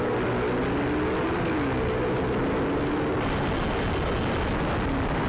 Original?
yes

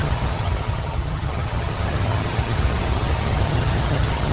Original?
no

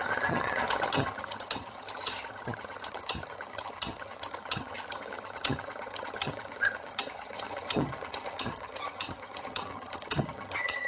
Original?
no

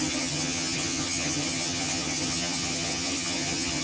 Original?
no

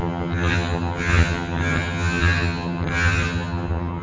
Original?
no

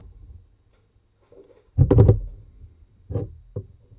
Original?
yes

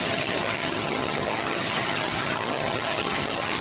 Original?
no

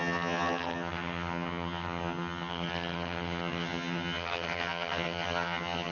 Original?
no